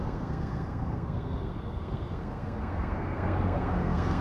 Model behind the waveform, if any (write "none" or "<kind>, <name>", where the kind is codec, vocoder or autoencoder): codec, SNAC